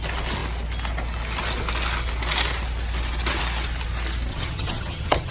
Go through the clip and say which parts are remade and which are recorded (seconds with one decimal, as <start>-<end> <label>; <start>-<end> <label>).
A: 0.0-4.3 recorded; 4.3-5.3 remade